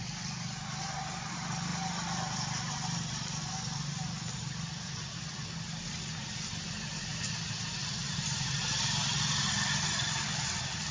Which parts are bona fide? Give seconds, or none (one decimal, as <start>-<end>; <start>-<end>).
0.0-7.8; 8.7-10.9